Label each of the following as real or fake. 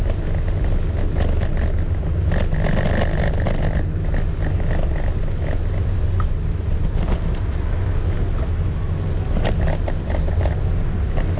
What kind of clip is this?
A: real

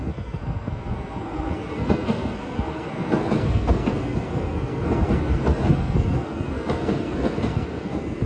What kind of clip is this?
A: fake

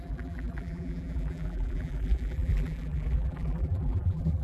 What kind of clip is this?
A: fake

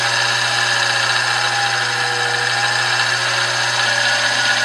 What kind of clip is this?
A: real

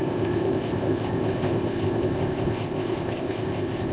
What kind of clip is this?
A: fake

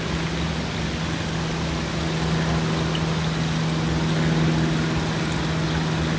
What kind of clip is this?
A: real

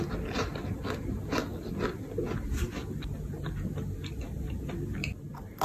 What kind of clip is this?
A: real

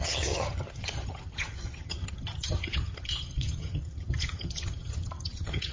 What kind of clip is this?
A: fake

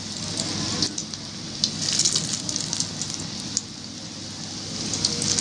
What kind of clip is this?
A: real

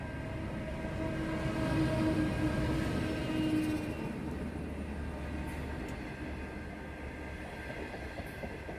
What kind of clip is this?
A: real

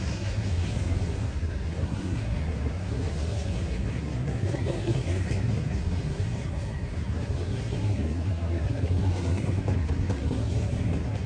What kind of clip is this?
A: fake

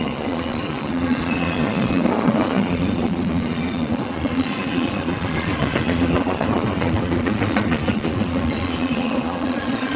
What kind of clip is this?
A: fake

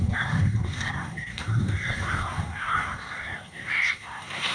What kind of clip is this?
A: fake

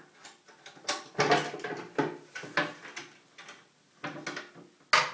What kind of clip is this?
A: real